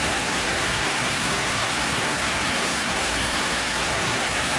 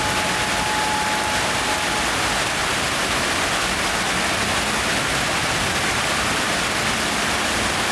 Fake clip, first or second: first